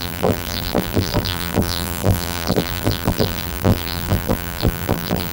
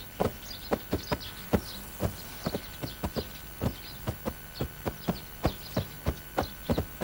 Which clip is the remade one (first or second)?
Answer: first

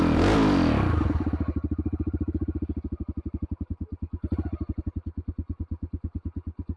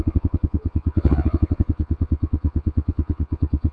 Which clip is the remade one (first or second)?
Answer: second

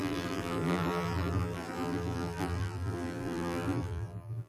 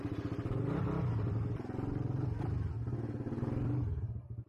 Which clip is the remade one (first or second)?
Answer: first